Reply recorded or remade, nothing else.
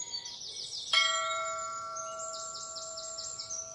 remade